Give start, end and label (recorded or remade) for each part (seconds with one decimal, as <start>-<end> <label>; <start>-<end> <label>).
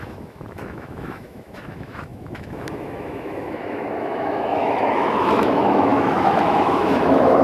0.0-7.4 remade